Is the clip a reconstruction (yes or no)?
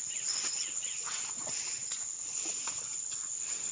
yes